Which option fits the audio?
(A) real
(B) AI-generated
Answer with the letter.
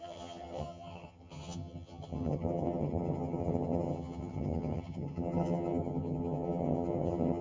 B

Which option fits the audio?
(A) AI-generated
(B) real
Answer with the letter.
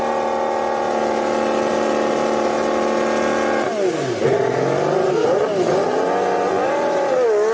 B